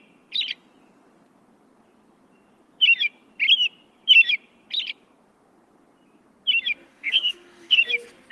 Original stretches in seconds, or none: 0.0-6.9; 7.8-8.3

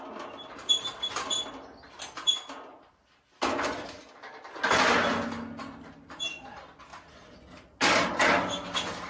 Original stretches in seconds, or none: 0.0-9.1

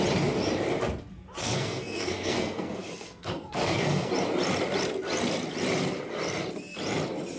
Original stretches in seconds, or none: 0.0-1.4; 4.1-7.4

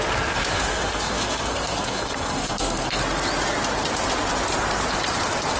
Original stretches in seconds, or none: 0.0-0.5; 3.0-5.6

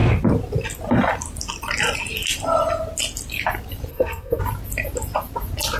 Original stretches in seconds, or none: 0.0-3.9; 4.4-5.8

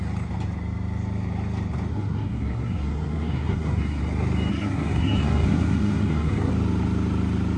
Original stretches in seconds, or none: 0.0-1.9; 4.0-4.5; 6.5-7.6